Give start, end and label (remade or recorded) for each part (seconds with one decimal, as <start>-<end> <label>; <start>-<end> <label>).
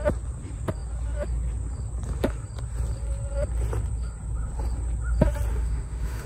0.0-5.5 recorded; 5.5-6.3 remade